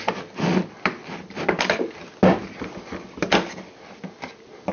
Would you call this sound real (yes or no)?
yes